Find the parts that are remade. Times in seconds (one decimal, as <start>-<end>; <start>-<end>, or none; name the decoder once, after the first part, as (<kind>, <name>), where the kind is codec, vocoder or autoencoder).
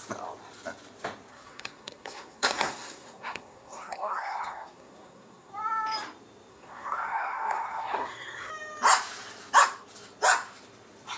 1.3-5.5 (codec, SNAC); 6.5-8.5